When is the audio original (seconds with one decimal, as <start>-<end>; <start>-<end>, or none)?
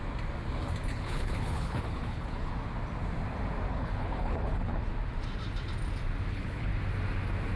0.0-0.9; 2.5-3.7; 4.9-6.3; 6.7-7.6